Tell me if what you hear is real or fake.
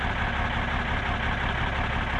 real